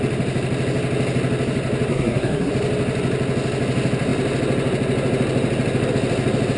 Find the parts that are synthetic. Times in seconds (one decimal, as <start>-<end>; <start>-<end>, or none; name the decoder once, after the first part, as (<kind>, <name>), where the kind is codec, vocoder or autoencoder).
1.9-2.5 (codec, SNAC)